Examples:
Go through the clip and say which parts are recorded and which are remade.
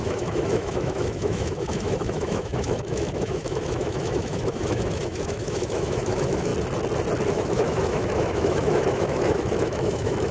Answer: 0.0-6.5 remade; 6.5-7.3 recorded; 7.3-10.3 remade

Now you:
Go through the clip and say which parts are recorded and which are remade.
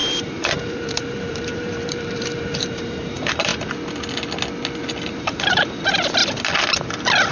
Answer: 0.0-3.5 remade; 3.5-5.1 recorded; 5.1-6.2 remade; 6.2-7.3 recorded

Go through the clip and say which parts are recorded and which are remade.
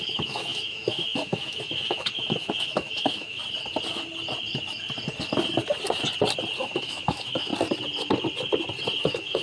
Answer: 0.0-3.4 remade; 3.4-6.6 recorded; 6.6-7.5 remade; 7.5-9.0 recorded; 9.0-9.4 remade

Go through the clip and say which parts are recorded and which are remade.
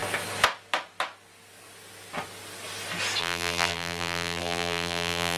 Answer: 0.0-3.2 recorded; 3.2-5.4 remade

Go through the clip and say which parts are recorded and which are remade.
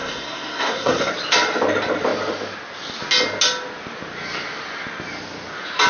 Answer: 0.0-1.1 remade; 1.1-5.9 recorded